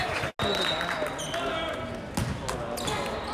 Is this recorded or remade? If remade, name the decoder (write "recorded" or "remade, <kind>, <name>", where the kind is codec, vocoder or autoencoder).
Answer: recorded